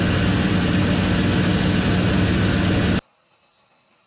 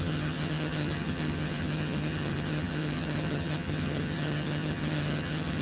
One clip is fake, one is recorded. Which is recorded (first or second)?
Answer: first